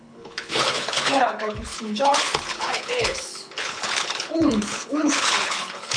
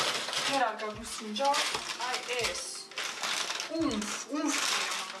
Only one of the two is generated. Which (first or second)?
first